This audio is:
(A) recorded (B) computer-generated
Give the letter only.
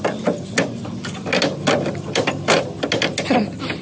A